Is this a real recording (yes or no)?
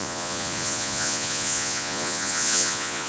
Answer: no